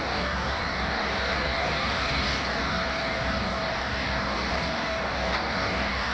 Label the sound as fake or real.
fake